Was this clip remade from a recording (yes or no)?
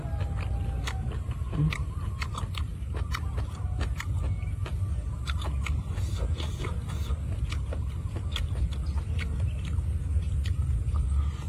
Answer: no